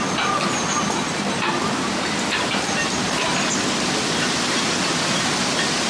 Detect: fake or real real